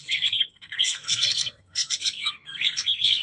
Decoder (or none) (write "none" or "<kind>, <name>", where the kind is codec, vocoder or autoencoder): codec, SNAC